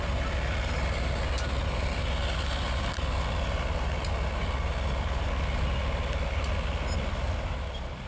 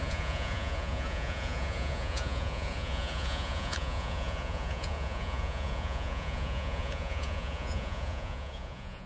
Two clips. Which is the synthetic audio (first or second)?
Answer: second